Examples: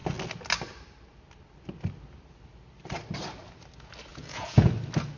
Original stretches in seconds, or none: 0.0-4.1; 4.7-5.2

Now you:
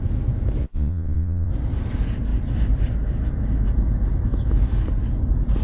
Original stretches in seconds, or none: 0.0-0.6; 1.5-5.6

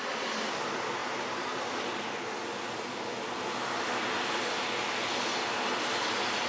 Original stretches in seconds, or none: 0.0-6.5

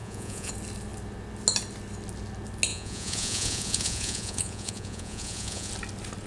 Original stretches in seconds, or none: 0.5-2.7; 5.7-6.3

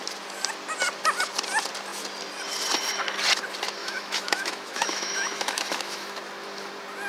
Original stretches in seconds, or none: 0.0-3.8; 6.2-7.1

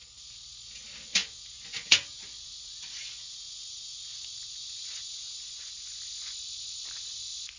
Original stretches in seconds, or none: 0.0-1.2; 5.7-7.6

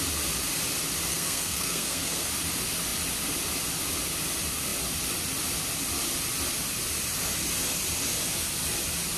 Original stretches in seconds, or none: 0.0-1.1; 2.3-9.2

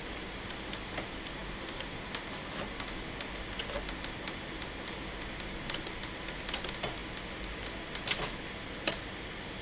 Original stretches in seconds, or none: 0.0-9.6